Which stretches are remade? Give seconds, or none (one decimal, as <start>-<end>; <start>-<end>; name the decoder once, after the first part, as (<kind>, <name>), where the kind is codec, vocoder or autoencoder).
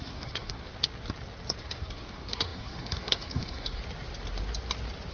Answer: 0.0-0.7 (codec, SNAC); 1.6-3.8